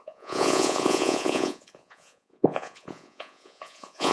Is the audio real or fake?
fake